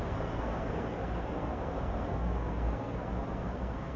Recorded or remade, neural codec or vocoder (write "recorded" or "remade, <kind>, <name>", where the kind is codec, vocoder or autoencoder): remade, codec, SNAC